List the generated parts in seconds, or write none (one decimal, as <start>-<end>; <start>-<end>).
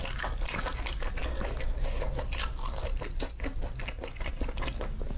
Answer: none